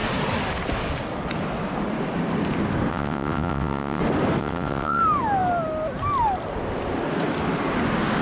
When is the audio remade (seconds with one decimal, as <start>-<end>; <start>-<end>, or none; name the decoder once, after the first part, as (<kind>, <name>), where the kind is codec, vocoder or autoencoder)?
2.9-4.0 (vocoder, WaveNeXt); 4.4-5.0